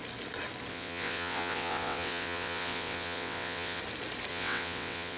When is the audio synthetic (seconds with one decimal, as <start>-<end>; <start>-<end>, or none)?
0.7-3.8; 4.3-5.2